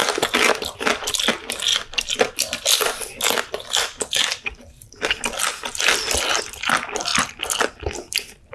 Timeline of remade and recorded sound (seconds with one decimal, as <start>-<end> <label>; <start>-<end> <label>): 0.0-8.5 recorded